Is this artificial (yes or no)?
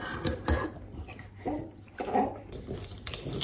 yes